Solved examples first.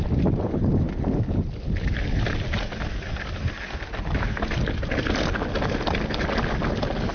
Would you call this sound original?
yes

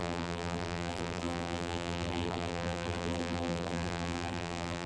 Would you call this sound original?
no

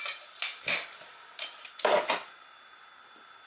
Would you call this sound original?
yes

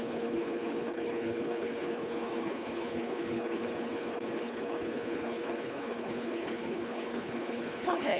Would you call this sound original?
no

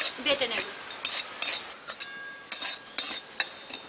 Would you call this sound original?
yes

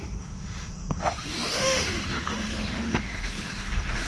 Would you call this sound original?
no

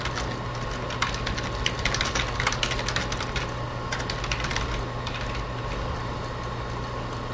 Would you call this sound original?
yes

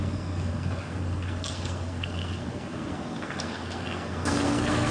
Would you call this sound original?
no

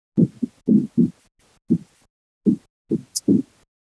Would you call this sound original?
yes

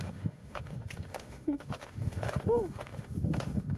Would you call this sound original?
no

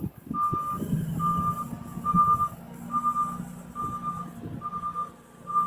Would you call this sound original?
yes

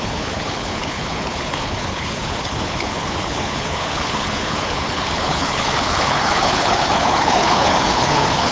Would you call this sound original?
no